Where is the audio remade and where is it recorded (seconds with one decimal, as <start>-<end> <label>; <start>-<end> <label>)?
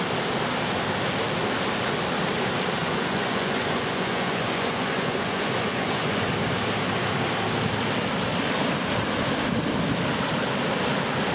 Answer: 0.0-2.8 recorded; 2.8-6.3 remade; 6.3-11.3 recorded